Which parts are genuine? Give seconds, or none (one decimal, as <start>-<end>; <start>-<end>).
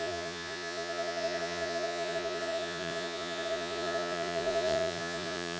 none